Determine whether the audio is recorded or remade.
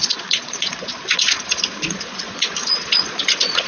remade